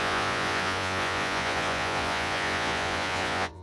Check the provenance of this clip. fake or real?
fake